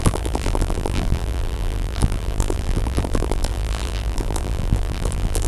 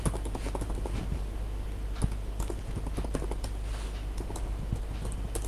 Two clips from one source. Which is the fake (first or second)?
first